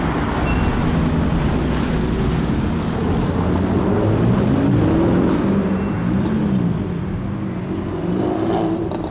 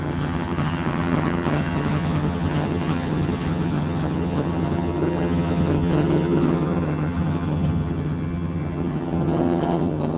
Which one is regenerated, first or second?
second